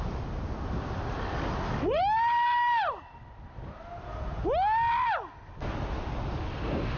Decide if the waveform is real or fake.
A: real